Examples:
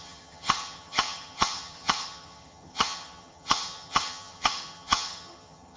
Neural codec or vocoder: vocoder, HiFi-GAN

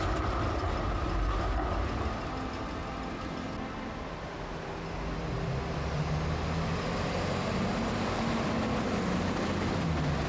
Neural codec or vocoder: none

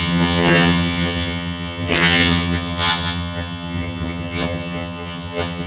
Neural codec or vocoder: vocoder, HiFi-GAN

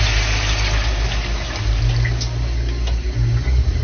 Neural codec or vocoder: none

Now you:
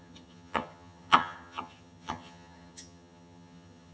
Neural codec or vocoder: vocoder, HiFi-GAN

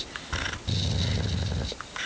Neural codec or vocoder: none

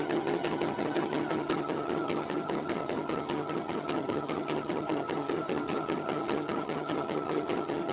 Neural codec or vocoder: vocoder, HiFi-GAN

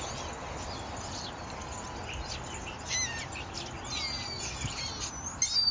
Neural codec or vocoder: none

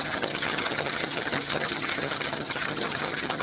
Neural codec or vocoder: vocoder, HiFi-GAN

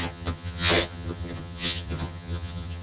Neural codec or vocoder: vocoder, HiFi-GAN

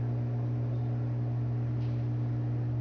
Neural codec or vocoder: none